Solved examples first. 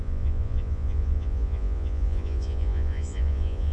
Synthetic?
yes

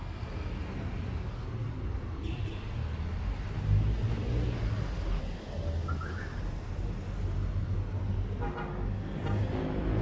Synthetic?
no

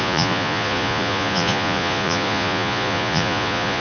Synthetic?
yes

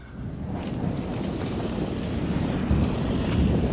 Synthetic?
no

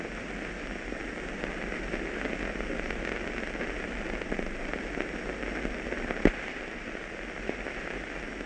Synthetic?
no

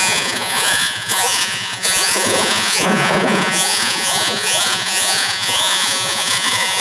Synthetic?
yes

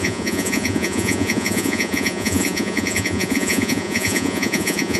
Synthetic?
yes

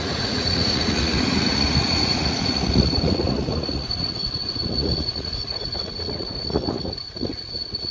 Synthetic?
yes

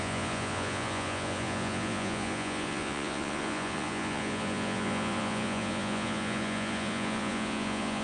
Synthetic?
yes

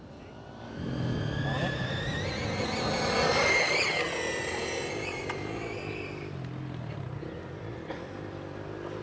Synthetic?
no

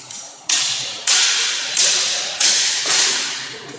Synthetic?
yes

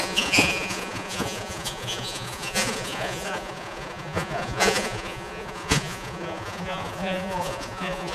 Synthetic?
yes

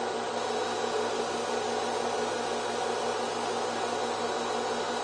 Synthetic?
no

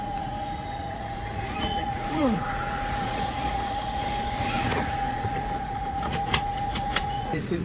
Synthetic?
yes